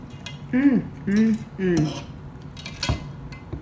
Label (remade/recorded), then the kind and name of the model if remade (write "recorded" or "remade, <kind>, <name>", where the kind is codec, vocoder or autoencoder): recorded